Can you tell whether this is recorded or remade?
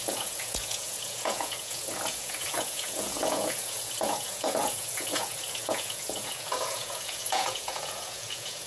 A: remade